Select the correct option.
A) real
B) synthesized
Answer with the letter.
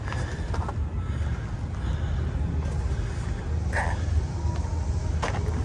A